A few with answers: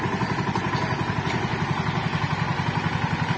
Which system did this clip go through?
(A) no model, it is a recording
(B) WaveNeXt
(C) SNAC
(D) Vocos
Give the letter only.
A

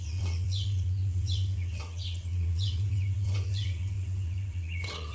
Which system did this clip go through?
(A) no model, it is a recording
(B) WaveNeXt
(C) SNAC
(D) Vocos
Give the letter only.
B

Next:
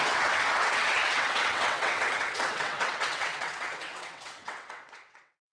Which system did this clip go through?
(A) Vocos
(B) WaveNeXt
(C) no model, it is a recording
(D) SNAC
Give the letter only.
B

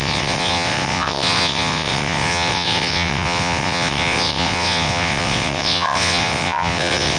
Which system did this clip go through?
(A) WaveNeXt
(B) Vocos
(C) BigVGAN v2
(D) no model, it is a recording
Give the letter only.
A